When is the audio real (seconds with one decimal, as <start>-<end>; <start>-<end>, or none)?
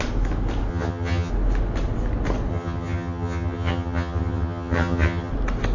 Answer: 0.0-0.7; 1.3-2.5; 5.3-5.7